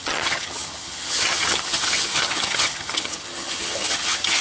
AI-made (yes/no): yes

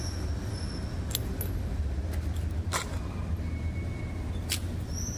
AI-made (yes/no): no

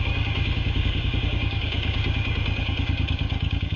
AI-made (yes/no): yes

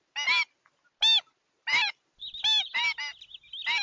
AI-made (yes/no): no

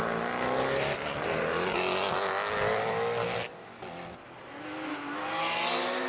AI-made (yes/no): no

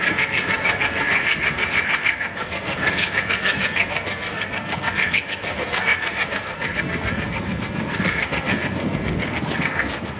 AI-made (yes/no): yes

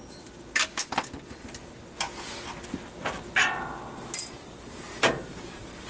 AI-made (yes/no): no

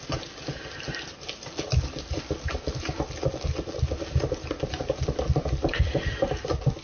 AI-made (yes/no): no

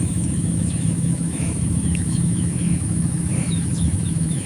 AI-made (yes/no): yes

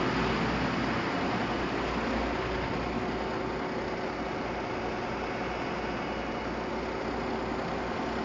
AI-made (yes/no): no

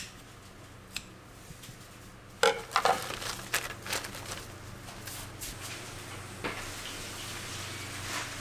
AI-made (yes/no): no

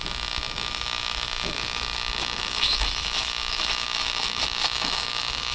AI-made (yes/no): yes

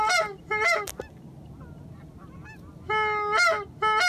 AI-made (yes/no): no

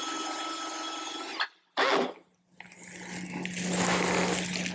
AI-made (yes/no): no